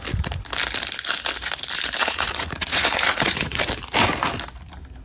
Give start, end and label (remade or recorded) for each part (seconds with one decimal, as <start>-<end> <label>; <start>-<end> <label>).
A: 0.0-2.0 recorded; 2.0-3.6 remade; 3.6-5.0 recorded